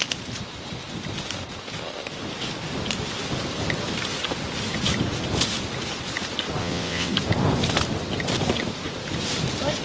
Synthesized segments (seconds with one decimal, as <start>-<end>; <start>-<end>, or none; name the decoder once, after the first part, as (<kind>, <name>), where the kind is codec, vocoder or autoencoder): 6.6-7.1 (vocoder, WaveNeXt)